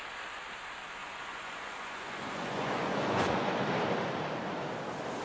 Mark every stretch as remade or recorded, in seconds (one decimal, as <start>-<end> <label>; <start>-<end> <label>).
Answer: 0.0-1.0 recorded; 1.0-3.5 remade; 3.5-5.2 recorded